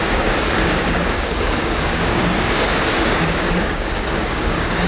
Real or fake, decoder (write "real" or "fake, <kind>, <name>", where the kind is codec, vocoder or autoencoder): fake, codec, DAC